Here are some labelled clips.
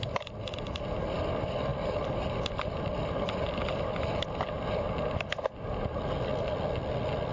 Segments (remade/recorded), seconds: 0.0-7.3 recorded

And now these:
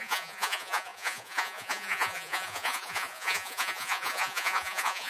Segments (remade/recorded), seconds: 0.0-5.1 remade

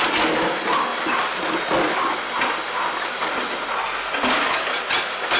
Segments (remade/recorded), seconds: 0.0-5.4 recorded

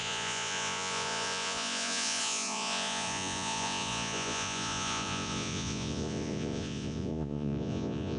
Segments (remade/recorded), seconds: 0.0-8.2 remade

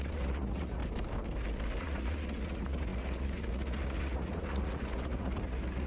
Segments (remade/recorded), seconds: 0.0-0.8 remade; 0.8-1.8 recorded; 1.8-5.9 remade